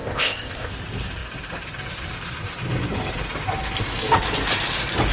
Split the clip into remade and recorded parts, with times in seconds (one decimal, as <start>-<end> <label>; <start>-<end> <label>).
0.0-0.7 remade; 0.7-5.1 recorded